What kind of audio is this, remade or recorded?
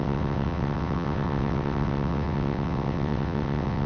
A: remade